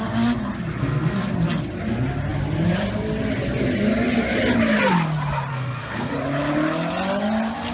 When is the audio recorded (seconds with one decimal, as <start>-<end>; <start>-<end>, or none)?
0.0-0.8; 1.3-5.5; 6.1-7.7